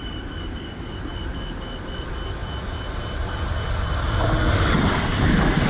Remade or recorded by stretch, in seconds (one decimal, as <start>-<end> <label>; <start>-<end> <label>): 0.0-1.0 remade; 1.0-5.7 recorded